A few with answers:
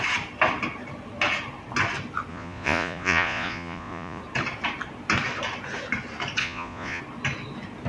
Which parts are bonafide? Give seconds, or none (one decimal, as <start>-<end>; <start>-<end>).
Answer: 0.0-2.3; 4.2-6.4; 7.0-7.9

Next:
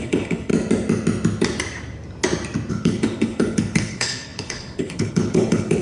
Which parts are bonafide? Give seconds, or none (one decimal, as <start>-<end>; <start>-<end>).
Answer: 0.5-2.7

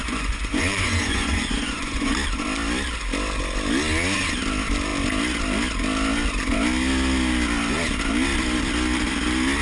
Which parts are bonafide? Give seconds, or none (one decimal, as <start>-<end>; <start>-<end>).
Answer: 2.1-9.6

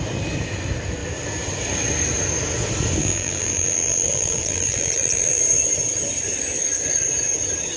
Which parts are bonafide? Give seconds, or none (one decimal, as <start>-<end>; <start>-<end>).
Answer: 0.0-3.0; 5.4-7.8